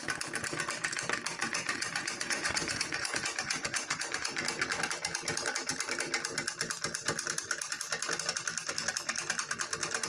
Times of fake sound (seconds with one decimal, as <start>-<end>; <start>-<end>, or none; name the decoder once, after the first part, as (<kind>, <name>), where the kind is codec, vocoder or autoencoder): 1.4-4.4 (vocoder, Vocos)